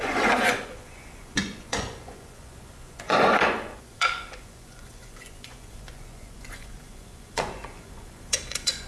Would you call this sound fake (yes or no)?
yes